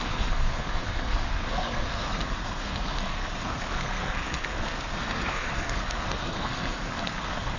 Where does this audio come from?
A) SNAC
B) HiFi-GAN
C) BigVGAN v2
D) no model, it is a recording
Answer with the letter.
A